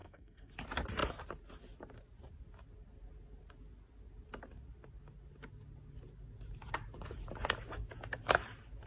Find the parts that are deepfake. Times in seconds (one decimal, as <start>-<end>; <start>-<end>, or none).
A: 0.0-0.5